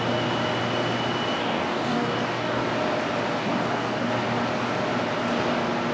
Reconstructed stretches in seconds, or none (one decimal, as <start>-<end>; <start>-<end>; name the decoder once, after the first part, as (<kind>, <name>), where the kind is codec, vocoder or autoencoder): 1.4-2.6 (codec, DAC); 3.4-4.1

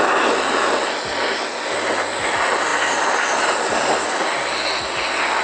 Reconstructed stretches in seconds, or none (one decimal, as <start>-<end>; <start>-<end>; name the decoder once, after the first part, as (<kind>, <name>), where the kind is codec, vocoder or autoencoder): none

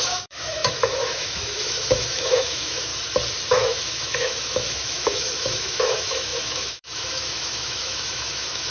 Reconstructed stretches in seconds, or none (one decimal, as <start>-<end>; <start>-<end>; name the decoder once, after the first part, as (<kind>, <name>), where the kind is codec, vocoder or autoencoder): 0.0-2.9 (autoencoder, DAC-VAE); 3.5-8.7

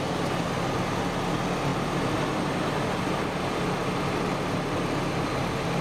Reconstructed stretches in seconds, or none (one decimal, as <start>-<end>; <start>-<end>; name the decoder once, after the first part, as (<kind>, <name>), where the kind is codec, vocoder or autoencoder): none

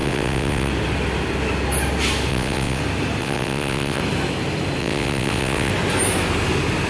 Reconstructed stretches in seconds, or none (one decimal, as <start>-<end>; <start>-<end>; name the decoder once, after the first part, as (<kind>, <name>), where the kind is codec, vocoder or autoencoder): 0.0-0.7 (vocoder, WaveNeXt); 2.3-2.8; 3.2-4.0; 4.8-5.7

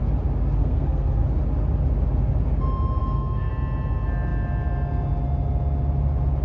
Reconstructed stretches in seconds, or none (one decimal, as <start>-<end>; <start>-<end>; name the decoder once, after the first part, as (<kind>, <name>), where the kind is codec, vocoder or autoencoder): 0.6-1.2 (codec, SNAC); 3.0-3.5